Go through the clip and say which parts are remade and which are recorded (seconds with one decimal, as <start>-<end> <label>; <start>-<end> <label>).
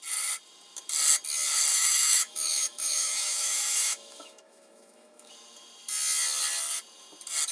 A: 0.0-1.7 recorded; 1.7-5.3 remade; 5.3-7.5 recorded